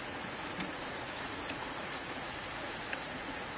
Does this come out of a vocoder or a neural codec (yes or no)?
yes